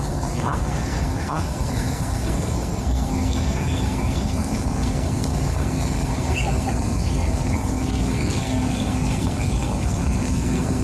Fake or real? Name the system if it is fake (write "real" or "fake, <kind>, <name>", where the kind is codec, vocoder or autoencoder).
fake, codec, SNAC